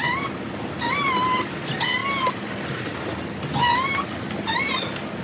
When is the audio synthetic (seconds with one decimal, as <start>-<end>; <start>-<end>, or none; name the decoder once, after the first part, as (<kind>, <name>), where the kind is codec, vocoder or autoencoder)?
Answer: none